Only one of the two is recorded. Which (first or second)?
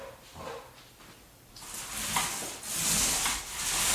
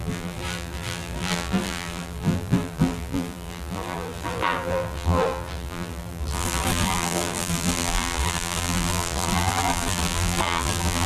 first